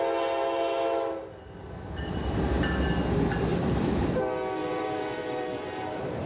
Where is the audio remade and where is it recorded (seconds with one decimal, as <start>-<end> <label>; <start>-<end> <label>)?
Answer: 0.0-3.5 recorded; 3.5-4.0 remade; 4.0-4.6 recorded; 4.6-6.3 remade

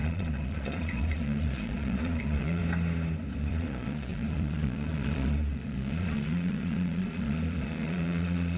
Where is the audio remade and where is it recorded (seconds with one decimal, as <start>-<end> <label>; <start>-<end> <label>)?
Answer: 0.0-2.6 remade; 2.6-3.4 recorded; 3.4-8.6 remade